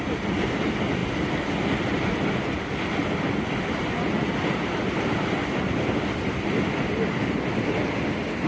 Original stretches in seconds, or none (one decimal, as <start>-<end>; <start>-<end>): 0.0-8.5